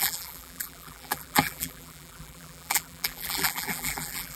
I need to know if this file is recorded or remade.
remade